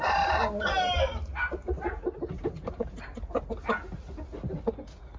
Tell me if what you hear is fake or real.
real